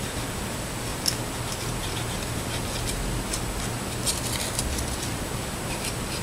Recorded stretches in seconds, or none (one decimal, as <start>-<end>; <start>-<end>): 0.0-6.2